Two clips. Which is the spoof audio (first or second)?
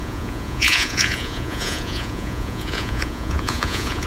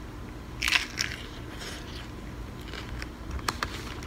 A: first